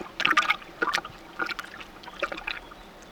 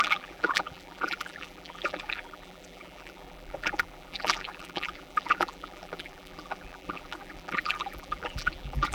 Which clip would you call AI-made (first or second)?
second